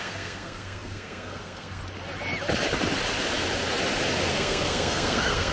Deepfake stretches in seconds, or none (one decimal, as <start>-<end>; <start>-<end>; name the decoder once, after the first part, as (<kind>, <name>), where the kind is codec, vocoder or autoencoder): 0.0-1.8 (codec, SNAC); 4.3-5.5